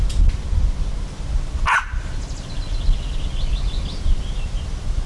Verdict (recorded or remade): recorded